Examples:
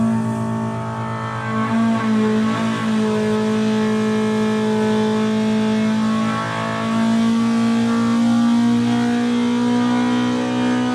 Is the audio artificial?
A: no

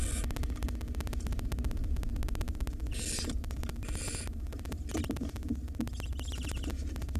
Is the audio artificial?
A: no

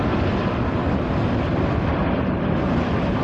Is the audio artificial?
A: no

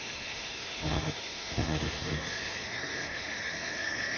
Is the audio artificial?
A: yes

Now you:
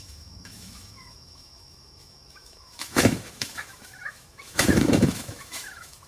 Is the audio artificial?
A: yes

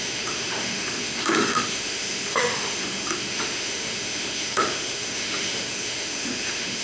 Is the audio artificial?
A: yes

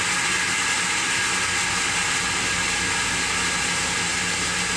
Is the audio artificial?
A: no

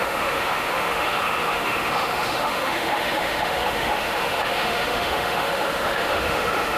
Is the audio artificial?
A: yes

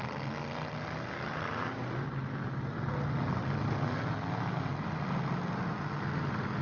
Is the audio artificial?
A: no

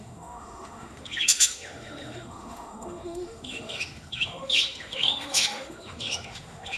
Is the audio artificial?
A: yes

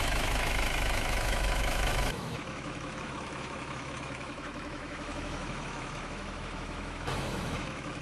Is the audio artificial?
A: yes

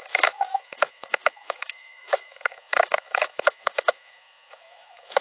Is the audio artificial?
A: yes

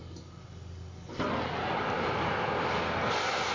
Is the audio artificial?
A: no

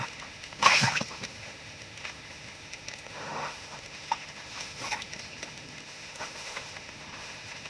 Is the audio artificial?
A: yes